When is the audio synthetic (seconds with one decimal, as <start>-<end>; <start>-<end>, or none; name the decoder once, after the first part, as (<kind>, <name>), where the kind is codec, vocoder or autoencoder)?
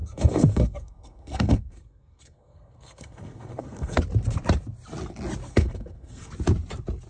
0.0-4.0 (codec, SNAC); 5.5-6.3